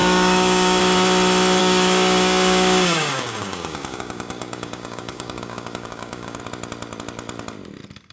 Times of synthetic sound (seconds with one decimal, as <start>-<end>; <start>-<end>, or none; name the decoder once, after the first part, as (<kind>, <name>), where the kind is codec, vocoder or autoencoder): 0.0-0.8 (codec, DAC); 1.6-6.4